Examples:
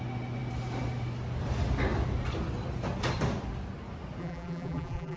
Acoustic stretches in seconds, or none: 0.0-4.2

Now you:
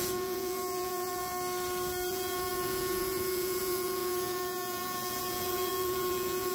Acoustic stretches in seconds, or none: 1.3-2.1